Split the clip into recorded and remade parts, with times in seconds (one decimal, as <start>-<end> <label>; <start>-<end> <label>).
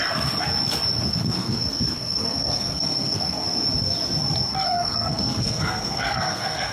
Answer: 0.0-1.1 recorded; 1.1-3.4 remade; 3.4-4.5 recorded; 4.5-6.7 remade